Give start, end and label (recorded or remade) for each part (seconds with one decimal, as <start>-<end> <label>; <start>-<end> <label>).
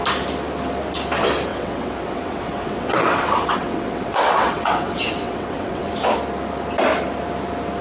0.0-1.5 recorded; 1.5-5.9 remade; 5.9-7.8 recorded